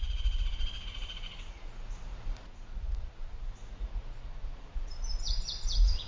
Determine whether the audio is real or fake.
fake